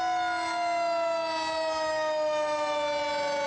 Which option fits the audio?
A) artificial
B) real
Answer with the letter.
B